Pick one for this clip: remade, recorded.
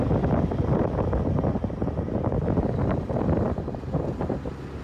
recorded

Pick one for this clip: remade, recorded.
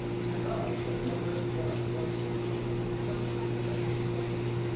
recorded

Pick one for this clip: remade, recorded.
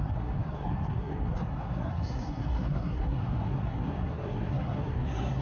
remade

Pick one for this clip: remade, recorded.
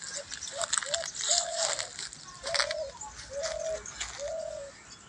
recorded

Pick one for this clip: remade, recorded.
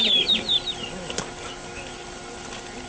recorded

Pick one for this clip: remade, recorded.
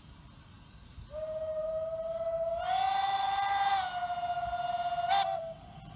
recorded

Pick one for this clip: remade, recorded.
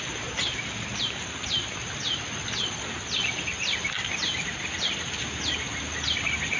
recorded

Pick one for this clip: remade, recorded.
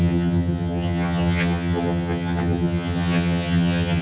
remade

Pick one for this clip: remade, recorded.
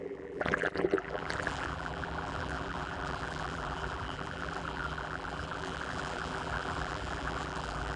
remade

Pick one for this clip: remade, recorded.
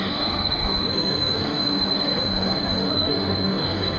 remade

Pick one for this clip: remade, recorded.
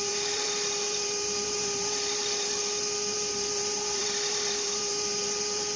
remade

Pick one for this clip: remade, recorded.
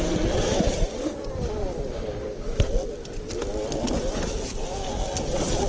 recorded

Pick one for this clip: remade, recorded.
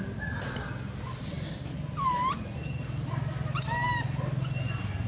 recorded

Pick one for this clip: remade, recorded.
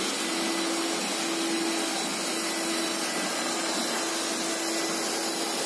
recorded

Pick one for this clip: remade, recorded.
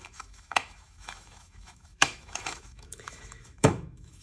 remade